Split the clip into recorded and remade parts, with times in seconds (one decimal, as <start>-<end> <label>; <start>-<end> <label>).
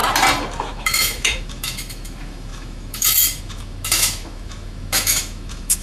0.0-0.6 recorded; 0.6-5.8 remade